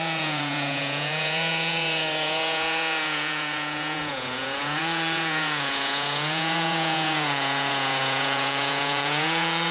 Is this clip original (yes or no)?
no